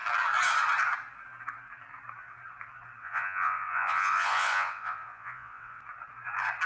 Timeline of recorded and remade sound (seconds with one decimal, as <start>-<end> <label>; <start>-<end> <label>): 0.0-3.0 recorded; 3.0-5.8 remade; 5.8-6.7 recorded